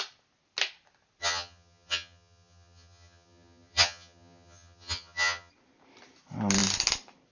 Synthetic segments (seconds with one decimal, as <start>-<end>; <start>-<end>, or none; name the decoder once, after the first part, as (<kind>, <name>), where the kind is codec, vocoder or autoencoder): 1.2-5.5 (vocoder, HiFi-GAN)

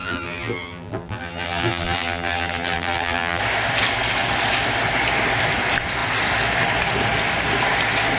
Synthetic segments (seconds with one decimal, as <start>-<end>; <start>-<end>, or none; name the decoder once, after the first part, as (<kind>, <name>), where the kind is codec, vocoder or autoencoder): 0.0-3.4 (vocoder, BigVGAN v2)

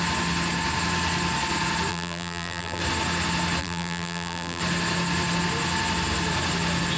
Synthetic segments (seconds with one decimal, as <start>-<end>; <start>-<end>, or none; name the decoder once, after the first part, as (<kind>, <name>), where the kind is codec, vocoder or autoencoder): 1.9-2.8 (vocoder, BigVGAN v2); 3.6-4.6